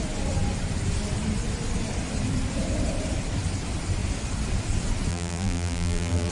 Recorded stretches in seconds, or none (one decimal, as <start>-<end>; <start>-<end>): 0.0-5.1